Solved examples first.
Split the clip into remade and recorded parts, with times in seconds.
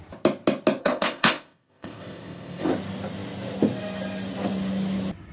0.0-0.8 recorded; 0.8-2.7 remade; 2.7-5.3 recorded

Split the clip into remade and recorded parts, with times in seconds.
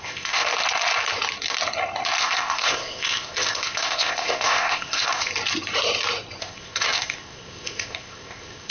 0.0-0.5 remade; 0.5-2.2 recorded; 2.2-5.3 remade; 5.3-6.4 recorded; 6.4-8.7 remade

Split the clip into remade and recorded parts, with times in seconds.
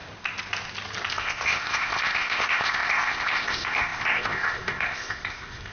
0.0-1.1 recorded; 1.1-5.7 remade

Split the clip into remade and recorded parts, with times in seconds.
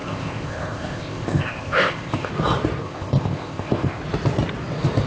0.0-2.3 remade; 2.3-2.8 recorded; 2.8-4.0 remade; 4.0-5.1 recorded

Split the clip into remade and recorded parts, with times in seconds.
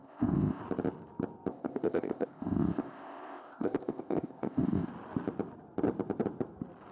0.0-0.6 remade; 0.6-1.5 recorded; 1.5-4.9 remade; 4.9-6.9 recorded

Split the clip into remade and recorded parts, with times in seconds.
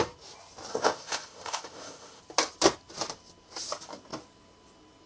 0.0-0.7 recorded; 0.7-2.2 remade; 2.2-5.1 recorded